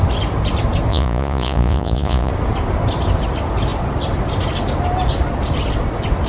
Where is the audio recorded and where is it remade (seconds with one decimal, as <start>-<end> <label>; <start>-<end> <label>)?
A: 0.0-0.9 recorded; 0.9-2.3 remade; 2.3-6.3 recorded